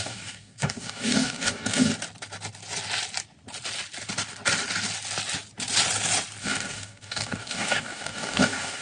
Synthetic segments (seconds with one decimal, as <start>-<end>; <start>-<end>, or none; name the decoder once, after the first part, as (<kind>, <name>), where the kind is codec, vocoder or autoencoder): 0.0-1.9 (codec, DAC); 6.4-8.8